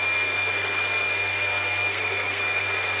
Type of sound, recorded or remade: remade